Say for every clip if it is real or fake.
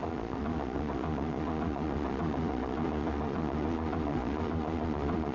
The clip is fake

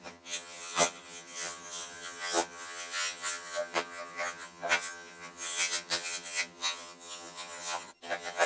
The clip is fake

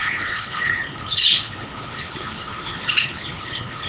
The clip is fake